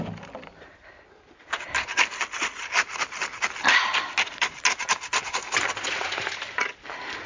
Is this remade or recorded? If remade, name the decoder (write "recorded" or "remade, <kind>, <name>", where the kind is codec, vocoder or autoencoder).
recorded